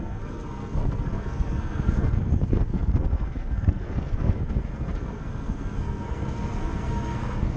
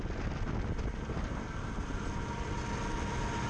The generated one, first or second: first